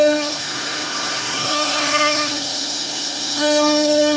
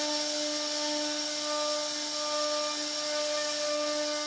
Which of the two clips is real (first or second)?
second